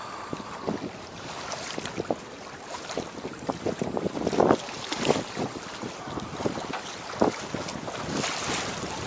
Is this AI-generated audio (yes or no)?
no